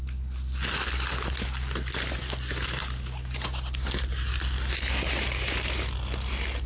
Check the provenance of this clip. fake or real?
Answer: real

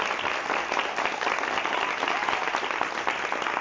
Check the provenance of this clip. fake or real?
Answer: real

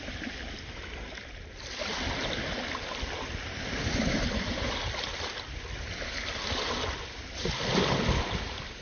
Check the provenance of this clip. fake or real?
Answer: real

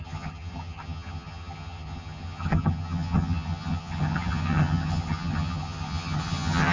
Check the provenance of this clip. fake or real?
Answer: fake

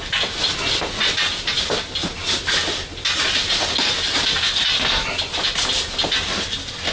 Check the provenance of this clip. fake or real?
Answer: real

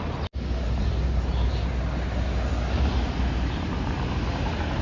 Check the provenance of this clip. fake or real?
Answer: real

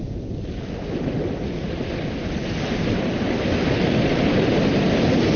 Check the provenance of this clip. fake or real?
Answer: real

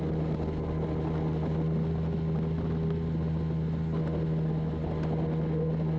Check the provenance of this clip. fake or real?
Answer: real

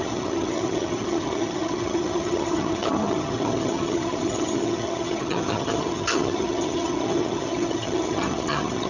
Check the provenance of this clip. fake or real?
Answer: fake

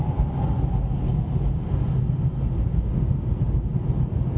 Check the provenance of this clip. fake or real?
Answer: real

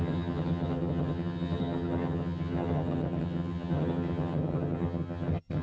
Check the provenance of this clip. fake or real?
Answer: fake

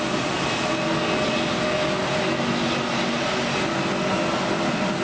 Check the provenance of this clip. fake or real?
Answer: real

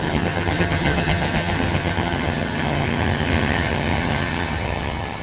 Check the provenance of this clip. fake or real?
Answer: fake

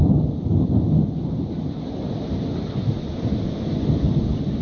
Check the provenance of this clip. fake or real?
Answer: real